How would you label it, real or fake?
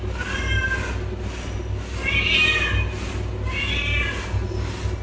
real